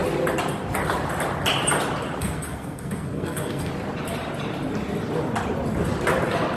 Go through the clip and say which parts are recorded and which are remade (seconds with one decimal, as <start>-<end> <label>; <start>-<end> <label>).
0.0-2.2 recorded; 2.2-3.7 remade; 3.7-6.6 recorded